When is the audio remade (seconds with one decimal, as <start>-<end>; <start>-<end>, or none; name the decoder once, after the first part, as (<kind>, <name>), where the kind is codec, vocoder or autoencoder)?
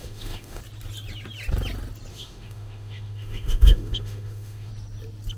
0.0-0.6 (autoencoder, DAC-VAE); 2.1-4.7